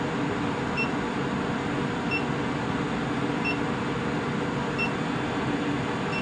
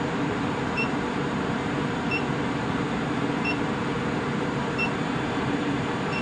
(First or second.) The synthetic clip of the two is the second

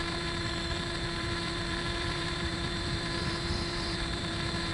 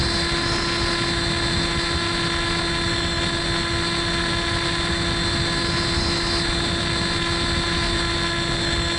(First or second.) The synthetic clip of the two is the first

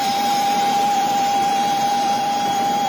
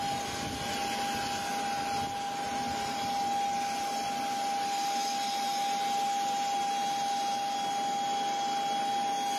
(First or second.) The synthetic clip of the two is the first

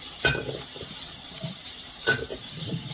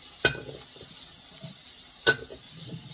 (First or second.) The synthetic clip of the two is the first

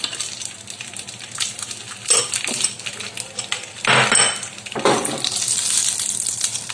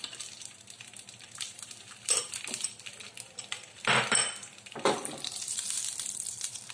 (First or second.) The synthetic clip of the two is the second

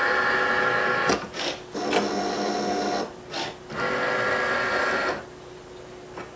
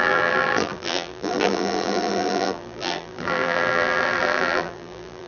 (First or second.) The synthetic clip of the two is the second